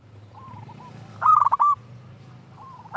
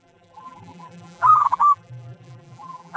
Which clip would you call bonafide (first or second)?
first